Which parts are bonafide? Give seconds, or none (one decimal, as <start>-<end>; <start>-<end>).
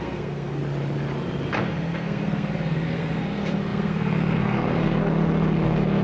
0.6-1.6